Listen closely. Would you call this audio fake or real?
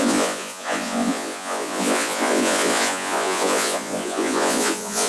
fake